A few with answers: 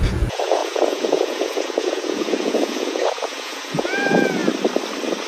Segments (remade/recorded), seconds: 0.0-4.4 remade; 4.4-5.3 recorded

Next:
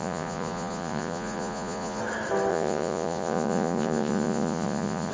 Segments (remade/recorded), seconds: 0.0-2.0 remade; 2.0-2.5 recorded; 2.5-5.1 remade

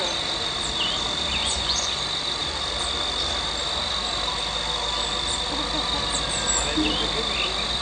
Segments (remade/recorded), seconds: 0.0-1.4 recorded; 1.4-2.0 remade; 2.0-7.8 recorded

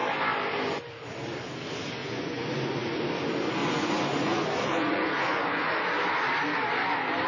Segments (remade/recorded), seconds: 0.0-2.0 recorded; 2.0-3.1 remade; 3.1-3.6 recorded; 3.6-5.7 remade; 5.7-7.3 recorded

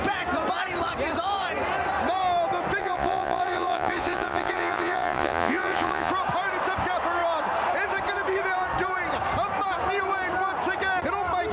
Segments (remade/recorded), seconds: 0.0-2.8 recorded; 2.8-6.1 remade; 6.1-11.5 recorded

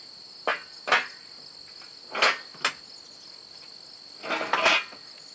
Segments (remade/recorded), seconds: 0.0-5.3 recorded